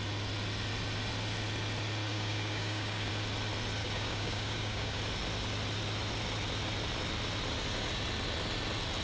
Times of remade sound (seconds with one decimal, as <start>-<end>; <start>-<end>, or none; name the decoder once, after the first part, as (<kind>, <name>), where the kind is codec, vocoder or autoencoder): 2.1-3.1 (codec, DAC); 3.8-5.0